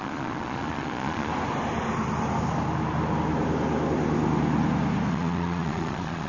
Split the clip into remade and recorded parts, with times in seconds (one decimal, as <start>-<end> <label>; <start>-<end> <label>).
0.0-1.3 remade; 1.3-5.1 recorded; 5.1-6.3 remade